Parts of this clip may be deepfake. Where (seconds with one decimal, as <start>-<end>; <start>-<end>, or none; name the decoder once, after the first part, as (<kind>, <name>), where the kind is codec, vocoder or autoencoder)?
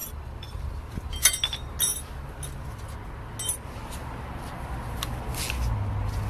0.0-0.7 (vocoder, BigVGAN v2)